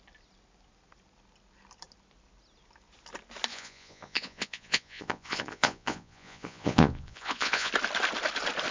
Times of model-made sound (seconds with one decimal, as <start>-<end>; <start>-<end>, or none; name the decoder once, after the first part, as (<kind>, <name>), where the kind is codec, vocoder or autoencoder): 3.5-7.7 (vocoder, Vocos)